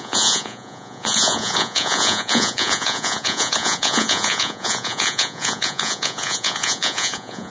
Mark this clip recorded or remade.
remade